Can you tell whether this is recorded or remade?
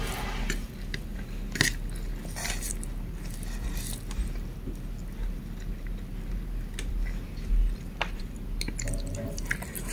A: recorded